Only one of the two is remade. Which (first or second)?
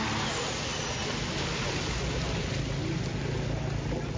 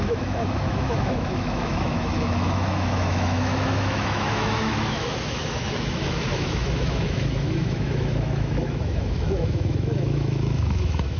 second